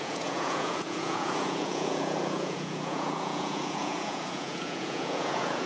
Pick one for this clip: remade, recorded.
remade